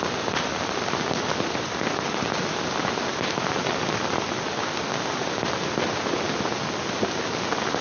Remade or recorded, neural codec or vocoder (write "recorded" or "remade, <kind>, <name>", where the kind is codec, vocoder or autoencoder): recorded